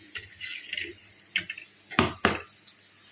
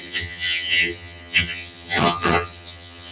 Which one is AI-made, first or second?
second